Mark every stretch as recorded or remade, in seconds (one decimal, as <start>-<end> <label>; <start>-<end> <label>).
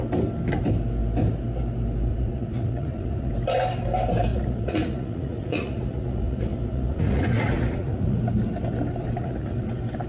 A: 0.0-2.1 recorded; 2.1-3.3 remade; 3.3-4.3 recorded; 4.3-8.2 remade; 8.2-9.2 recorded; 9.2-9.7 remade; 9.7-10.1 recorded